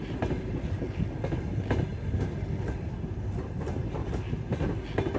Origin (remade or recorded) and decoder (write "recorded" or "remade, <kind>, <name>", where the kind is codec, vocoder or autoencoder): recorded